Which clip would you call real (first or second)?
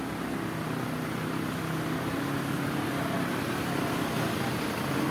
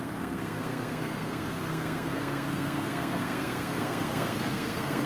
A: first